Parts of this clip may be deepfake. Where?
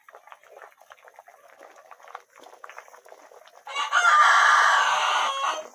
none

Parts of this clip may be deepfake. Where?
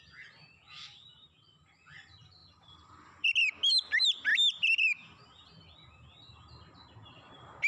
none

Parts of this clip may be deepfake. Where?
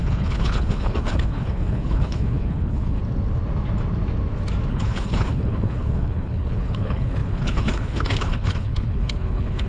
0.0-3.0 (codec, HILCodec); 4.7-9.7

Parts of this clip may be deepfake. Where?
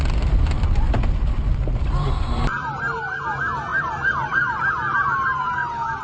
3.7-4.6 (vocoder, BigVGAN v2)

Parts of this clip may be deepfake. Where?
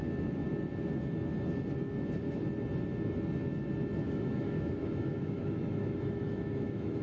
4.0-7.0 (autoencoder, DAC-VAE)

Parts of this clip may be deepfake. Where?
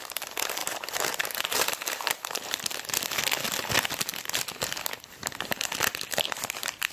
0.6-2.6 (vocoder, BigVGAN v2)